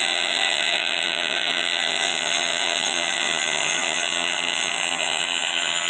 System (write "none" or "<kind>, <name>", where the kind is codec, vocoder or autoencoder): vocoder, HiFi-GAN